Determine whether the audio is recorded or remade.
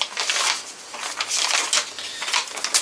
recorded